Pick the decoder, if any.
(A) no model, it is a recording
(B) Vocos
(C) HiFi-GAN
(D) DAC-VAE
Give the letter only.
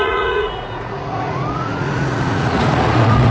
B